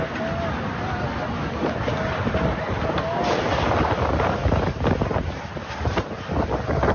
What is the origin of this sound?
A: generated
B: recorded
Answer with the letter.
B